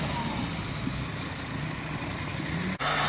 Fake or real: real